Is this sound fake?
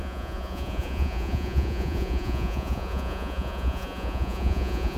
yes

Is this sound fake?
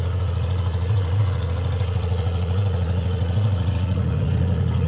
yes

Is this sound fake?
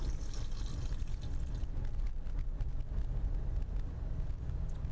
no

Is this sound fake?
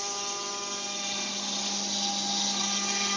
no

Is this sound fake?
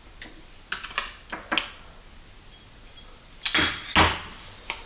no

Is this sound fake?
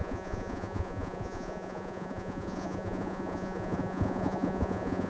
yes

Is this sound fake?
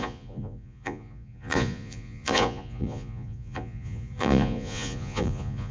yes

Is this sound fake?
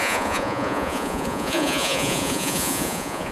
yes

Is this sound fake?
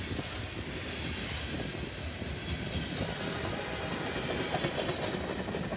no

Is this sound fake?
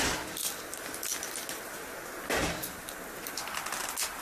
no